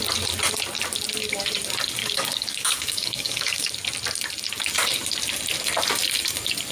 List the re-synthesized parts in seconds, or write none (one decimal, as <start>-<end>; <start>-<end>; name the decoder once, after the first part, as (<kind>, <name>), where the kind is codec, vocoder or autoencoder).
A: 2.0-3.7 (codec, DAC)